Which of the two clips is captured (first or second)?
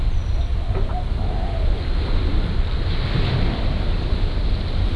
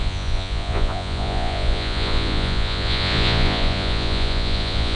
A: first